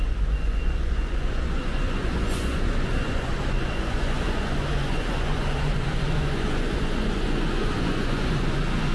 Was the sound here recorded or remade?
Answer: remade